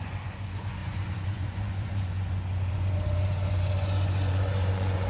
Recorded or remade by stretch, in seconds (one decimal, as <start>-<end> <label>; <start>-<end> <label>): 0.0-5.1 remade

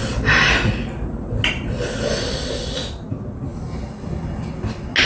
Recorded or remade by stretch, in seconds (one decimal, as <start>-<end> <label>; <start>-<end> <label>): 0.0-5.1 recorded